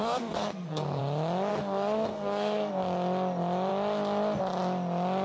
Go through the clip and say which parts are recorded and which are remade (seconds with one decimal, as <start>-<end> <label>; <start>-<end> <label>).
0.0-1.0 remade; 1.0-1.5 recorded; 1.5-2.7 remade; 2.7-5.2 recorded